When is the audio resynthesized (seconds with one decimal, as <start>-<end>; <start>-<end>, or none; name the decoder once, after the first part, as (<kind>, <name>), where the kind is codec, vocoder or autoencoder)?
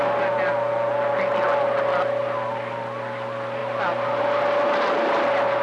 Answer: 3.6-4.2 (vocoder, BigVGAN v2)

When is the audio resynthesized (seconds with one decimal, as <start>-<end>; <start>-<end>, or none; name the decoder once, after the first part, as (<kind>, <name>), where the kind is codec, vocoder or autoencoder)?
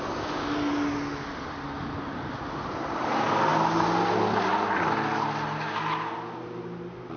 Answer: none